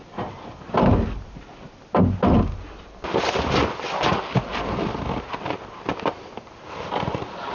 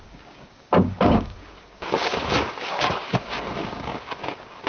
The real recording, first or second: first